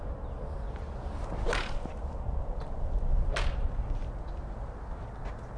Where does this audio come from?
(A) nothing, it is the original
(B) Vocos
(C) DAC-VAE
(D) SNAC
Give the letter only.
A